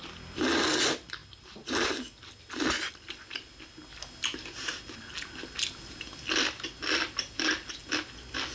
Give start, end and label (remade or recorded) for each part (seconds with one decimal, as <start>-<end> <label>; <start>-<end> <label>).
0.0-8.5 recorded

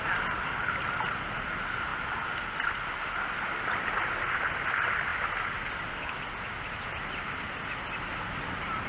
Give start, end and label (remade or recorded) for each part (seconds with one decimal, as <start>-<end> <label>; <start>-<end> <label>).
0.0-8.9 recorded

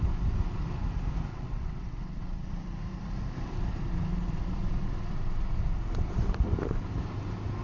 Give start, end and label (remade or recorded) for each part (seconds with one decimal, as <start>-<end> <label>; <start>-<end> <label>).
0.0-1.3 recorded; 1.3-2.5 remade; 2.5-7.6 recorded

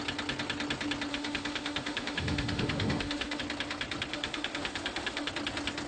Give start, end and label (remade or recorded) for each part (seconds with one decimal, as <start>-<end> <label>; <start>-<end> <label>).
0.0-1.1 recorded; 1.1-3.4 remade; 3.4-4.1 recorded; 4.1-5.3 remade; 5.3-5.9 recorded

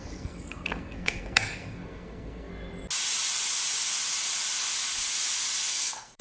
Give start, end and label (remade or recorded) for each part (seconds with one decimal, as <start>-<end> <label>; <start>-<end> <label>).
0.0-2.5 remade; 2.5-5.7 recorded; 5.7-6.2 remade

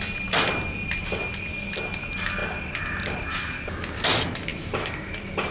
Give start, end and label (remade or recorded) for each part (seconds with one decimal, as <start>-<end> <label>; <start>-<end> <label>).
0.0-5.5 recorded

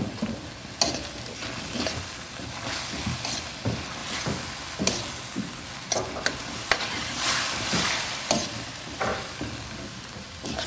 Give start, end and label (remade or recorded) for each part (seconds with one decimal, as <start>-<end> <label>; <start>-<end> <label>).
0.0-10.7 recorded

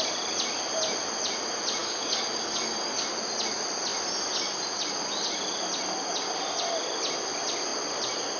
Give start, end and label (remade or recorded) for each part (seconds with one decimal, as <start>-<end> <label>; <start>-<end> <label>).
0.0-1.8 recorded; 1.8-3.0 remade; 3.0-8.4 recorded